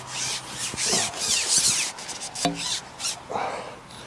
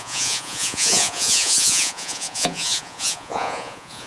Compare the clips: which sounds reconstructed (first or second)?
second